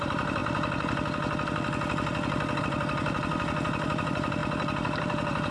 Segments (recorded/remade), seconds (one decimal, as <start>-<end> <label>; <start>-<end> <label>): 0.0-0.4 remade; 0.4-2.6 recorded; 2.6-5.5 remade